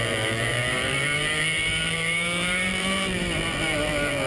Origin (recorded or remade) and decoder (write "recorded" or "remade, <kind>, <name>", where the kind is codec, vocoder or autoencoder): remade, vocoder, BigVGAN v2